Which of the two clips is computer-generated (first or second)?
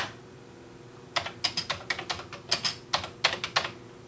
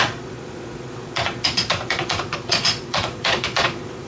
second